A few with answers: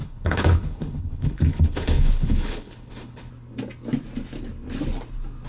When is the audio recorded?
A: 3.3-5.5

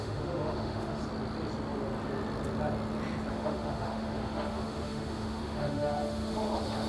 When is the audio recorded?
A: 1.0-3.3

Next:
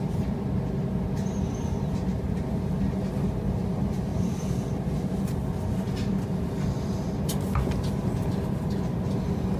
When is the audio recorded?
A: 0.0-2.1; 2.8-9.6